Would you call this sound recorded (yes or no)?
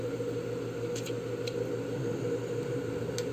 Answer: yes